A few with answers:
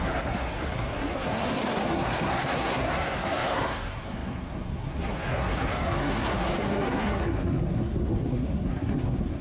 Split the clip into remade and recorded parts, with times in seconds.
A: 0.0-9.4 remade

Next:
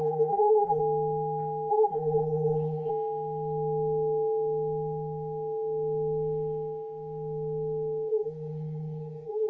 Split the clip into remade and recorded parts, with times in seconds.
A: 0.0-0.8 remade; 0.8-1.7 recorded; 1.7-2.9 remade; 2.9-8.1 recorded; 8.1-9.5 remade

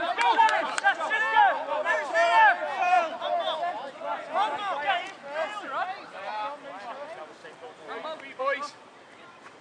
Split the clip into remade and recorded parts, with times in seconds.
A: 0.0-9.6 recorded

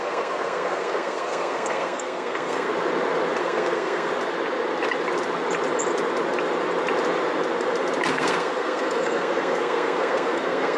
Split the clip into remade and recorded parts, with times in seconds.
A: 0.0-2.7 remade; 2.7-3.4 recorded; 3.4-4.1 remade; 4.1-8.1 recorded; 8.1-10.8 remade